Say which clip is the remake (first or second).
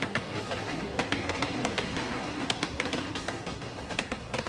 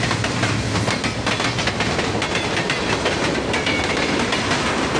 first